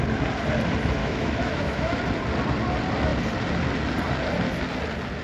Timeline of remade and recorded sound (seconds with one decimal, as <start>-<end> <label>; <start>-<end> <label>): 0.0-1.0 recorded; 1.0-2.0 remade; 2.0-5.2 recorded